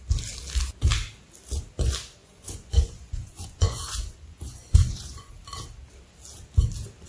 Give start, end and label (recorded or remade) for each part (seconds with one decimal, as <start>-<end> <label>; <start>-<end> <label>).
0.0-2.2 recorded; 2.2-5.3 remade; 5.3-7.1 recorded